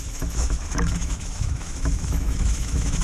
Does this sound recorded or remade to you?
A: remade